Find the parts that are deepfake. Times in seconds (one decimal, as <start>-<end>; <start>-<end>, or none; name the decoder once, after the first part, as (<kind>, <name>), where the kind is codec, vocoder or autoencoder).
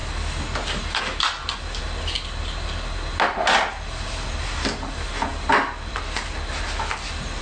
none